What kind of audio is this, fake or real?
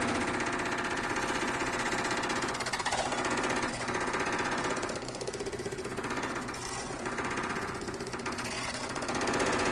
fake